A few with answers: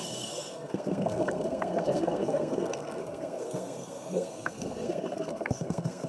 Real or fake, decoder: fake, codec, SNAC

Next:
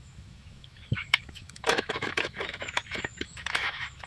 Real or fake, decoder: fake, autoencoder, DAC-VAE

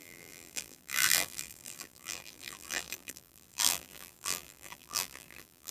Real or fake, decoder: fake, vocoder, BigVGAN v2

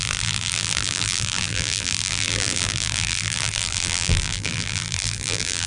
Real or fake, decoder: fake, vocoder, BigVGAN v2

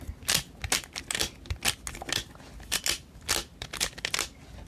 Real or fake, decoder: real